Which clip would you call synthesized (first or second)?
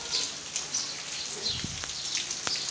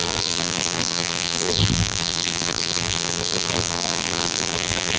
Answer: second